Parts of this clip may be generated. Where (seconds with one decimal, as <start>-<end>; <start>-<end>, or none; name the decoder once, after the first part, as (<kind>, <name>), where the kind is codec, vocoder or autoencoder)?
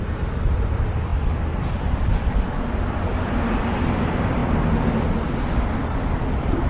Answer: 0.0-4.4 (vocoder, BigVGAN v2); 5.2-6.7